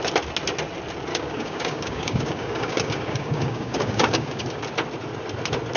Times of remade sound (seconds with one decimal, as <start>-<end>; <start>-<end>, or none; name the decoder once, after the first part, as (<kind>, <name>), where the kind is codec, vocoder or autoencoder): 1.1-4.6 (codec, DAC)

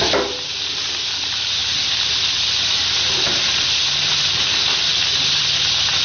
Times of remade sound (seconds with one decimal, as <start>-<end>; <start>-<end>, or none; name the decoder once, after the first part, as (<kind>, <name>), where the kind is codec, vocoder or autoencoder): none

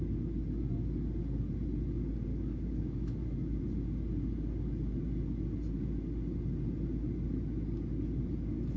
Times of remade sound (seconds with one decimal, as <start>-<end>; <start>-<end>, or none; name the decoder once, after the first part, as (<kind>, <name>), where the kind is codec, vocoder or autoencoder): 2.3-3.6 (autoencoder, DAC-VAE)

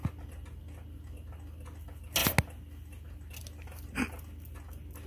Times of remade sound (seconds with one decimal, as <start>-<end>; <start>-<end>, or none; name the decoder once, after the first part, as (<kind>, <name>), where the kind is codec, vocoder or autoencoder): none

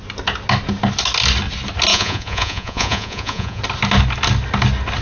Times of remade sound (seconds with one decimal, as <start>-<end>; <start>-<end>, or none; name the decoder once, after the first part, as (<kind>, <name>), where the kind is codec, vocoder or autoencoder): 1.9-3.6 (vocoder, Vocos)

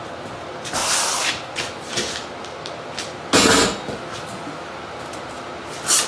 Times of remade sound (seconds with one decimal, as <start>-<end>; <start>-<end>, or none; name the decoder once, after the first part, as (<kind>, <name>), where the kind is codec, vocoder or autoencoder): 0.8-1.3 (vocoder, BigVGAN v2)

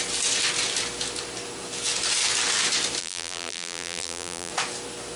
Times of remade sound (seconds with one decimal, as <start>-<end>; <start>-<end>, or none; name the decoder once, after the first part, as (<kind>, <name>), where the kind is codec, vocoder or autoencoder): 3.0-4.5 (vocoder, BigVGAN v2)